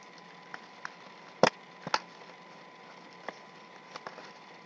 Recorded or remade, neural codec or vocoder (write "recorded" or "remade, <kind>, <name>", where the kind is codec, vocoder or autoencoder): recorded